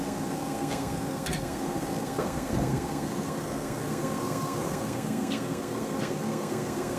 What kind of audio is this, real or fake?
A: fake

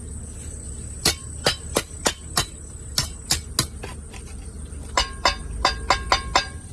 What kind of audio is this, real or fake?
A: real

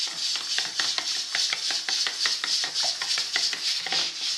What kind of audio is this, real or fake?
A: real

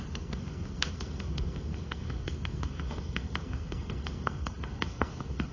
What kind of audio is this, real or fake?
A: fake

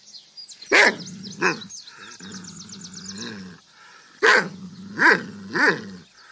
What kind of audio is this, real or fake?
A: real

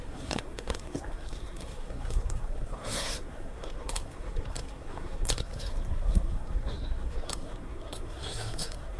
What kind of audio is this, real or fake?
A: fake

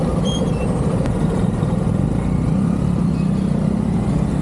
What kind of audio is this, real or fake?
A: real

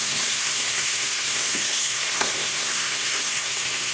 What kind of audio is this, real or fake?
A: fake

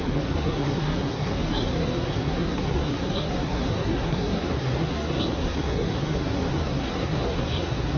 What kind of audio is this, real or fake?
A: fake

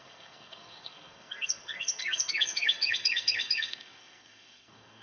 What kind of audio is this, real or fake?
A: fake